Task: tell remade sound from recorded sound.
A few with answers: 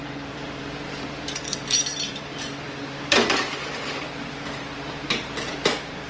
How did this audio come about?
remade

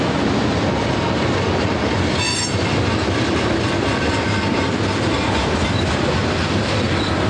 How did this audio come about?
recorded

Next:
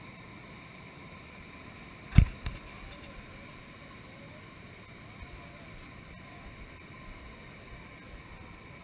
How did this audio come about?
recorded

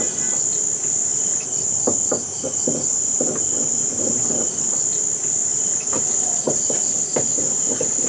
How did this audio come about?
recorded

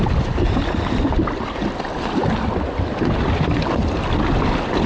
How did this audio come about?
recorded